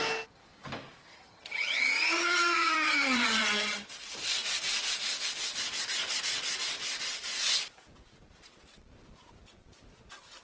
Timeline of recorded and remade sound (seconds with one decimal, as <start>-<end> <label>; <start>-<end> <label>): 0.0-1.1 recorded; 1.1-3.9 remade; 3.9-10.4 recorded